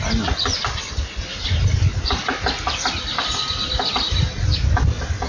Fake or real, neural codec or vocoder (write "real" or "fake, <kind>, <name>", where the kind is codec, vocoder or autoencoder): real